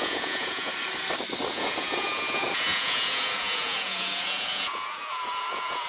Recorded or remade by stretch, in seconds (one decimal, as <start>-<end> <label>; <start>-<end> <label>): 0.0-0.7 remade; 0.7-1.5 recorded; 1.5-5.9 remade